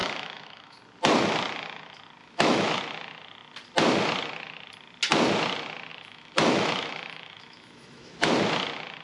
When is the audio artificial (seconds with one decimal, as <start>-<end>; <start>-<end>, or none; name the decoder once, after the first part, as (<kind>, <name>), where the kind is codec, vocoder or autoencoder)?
0.0-0.8 (autoencoder, DAC-VAE); 2.2-2.8; 5.9-8.3

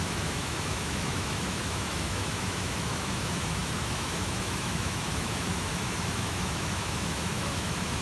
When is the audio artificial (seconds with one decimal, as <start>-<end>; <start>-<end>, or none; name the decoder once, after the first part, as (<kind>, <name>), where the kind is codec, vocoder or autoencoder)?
0.0-8.0 (autoencoder, DAC-VAE)